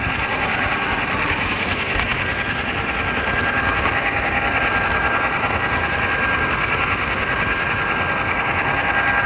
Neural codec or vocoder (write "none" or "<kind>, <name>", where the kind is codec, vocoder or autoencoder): none